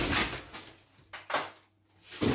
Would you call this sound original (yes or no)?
yes